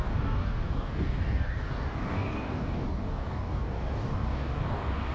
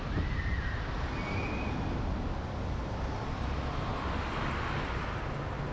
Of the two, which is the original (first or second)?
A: second